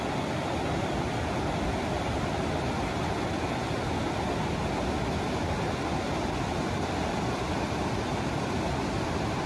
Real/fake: real